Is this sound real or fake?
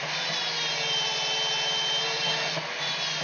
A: real